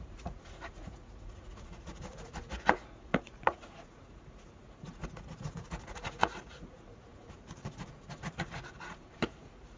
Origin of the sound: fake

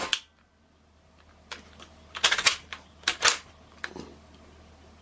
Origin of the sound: real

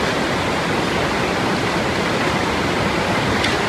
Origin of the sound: real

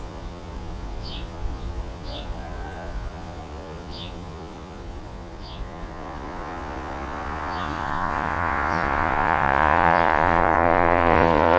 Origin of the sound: fake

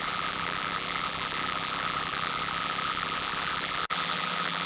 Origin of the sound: fake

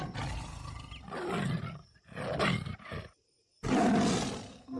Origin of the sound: real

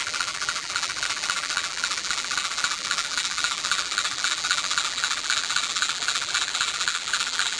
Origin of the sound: fake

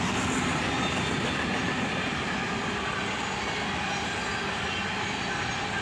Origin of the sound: real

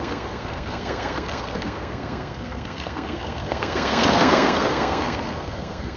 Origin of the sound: fake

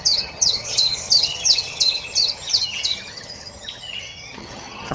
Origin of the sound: fake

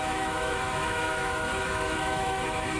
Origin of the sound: fake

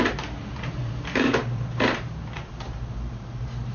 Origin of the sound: fake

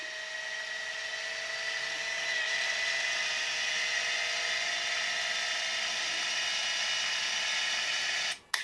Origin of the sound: real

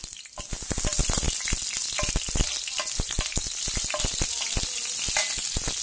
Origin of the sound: real